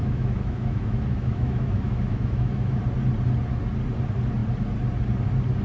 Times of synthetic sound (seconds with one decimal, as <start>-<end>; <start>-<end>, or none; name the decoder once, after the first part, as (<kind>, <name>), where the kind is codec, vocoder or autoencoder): 0.0-2.8 (autoencoder, DAC-VAE)